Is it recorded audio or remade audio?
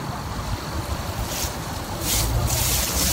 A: recorded